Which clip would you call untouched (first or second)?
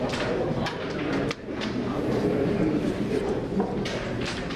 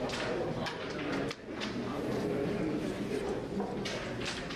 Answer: second